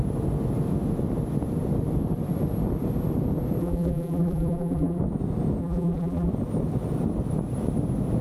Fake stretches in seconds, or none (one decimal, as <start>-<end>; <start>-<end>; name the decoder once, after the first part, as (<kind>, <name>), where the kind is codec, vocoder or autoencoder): 3.6-5.0 (vocoder, BigVGAN v2); 5.6-6.3